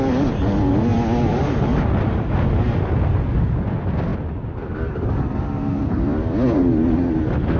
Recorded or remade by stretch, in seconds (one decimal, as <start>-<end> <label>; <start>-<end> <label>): 0.0-0.9 recorded; 0.9-2.5 remade; 2.5-4.1 recorded; 4.1-5.2 remade; 5.2-7.6 recorded

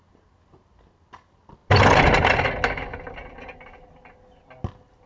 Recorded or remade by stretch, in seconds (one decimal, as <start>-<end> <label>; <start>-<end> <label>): 0.0-5.1 recorded